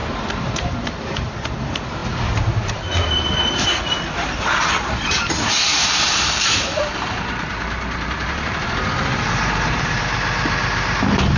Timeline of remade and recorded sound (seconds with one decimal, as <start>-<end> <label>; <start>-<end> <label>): 0.0-0.9 remade; 0.9-5.7 recorded; 5.7-10.0 remade; 10.0-11.4 recorded